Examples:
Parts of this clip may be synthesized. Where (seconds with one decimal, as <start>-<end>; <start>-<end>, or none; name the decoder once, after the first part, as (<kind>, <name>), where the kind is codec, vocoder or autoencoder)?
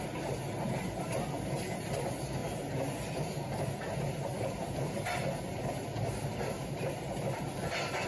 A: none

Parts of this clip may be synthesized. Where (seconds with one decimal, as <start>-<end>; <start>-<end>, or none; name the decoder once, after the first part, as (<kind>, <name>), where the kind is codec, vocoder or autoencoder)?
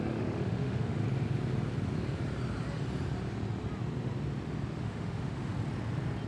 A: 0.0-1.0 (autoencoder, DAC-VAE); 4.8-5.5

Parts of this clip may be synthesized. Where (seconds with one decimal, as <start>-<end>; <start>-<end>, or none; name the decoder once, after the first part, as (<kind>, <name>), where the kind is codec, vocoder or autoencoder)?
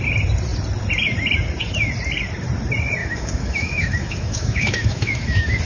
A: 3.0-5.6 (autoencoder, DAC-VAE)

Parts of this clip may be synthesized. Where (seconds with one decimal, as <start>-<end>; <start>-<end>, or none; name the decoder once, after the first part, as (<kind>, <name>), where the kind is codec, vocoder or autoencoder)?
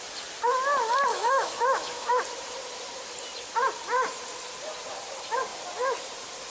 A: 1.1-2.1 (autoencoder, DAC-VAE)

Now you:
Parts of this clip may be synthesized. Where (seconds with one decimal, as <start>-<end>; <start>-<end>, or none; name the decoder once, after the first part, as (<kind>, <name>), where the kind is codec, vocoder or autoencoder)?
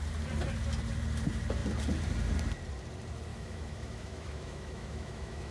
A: 3.3-5.5 (autoencoder, DAC-VAE)